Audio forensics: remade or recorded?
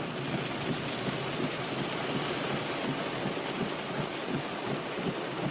recorded